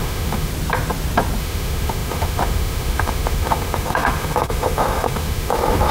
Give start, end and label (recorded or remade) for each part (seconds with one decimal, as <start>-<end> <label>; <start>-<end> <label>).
0.0-0.5 remade; 0.5-1.4 recorded; 1.4-5.9 remade